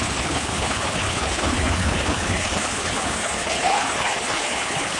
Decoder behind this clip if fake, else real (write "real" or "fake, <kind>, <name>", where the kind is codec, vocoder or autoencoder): fake, codec, HILCodec